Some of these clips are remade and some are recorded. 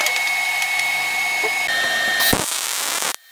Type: recorded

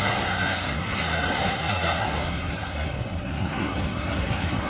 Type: remade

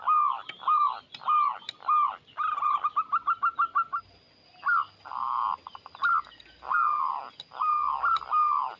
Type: recorded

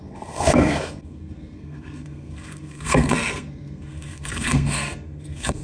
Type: remade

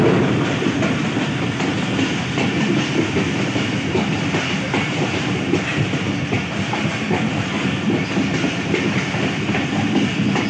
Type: recorded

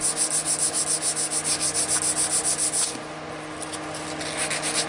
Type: recorded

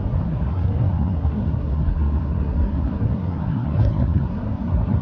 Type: remade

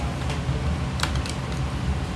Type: recorded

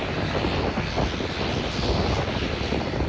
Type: recorded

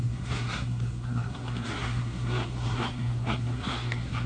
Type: remade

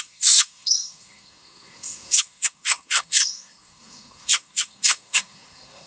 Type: remade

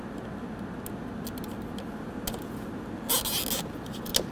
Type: recorded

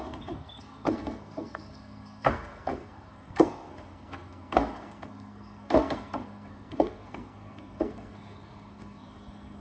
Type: remade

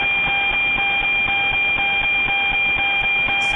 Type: recorded